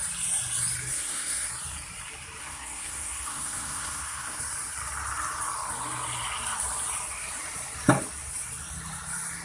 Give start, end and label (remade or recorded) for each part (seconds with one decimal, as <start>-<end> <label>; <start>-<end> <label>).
0.0-0.9 recorded; 0.9-1.5 remade; 1.5-2.4 recorded; 2.4-4.4 remade; 4.4-9.4 recorded